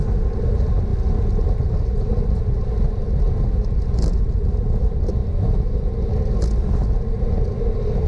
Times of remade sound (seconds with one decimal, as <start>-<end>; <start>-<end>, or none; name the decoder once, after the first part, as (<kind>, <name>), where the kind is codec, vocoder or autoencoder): none

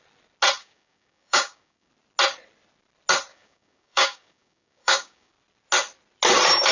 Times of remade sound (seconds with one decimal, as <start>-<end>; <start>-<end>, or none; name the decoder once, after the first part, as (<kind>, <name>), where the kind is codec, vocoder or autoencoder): 0.6-1.9 (codec, DAC); 3.3-5.3

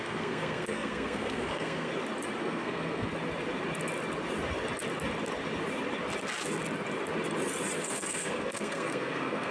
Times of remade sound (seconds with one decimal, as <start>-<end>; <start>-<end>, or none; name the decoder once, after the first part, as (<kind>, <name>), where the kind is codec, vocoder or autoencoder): 0.0-1.9 (codec, SNAC); 2.4-3.1; 7.8-9.5

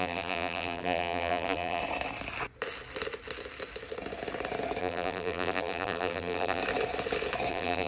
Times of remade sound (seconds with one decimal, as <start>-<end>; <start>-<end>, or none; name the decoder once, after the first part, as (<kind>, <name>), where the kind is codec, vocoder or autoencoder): 0.0-1.8 (vocoder, BigVGAN v2); 4.8-6.6; 7.5-7.9

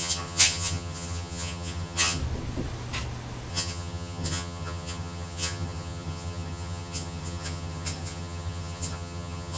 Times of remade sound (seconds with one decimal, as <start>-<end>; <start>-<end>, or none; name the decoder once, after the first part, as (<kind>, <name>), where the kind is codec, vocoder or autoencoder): 0.0-2.2 (vocoder, HiFi-GAN); 3.5-9.6

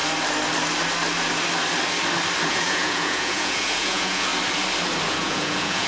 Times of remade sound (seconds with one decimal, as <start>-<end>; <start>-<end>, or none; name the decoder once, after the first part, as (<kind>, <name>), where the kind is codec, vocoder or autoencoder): 2.5-4.3 (vocoder, Vocos); 5.0-5.9